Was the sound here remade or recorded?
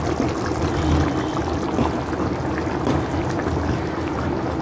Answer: recorded